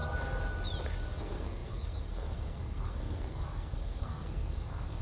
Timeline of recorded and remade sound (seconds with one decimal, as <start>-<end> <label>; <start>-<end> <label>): 0.0-1.2 recorded; 1.2-5.0 remade